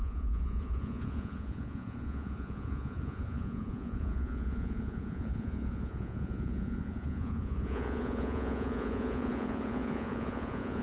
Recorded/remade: remade